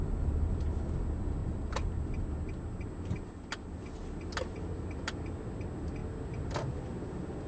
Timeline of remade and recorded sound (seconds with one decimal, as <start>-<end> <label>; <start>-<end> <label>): 0.0-7.5 recorded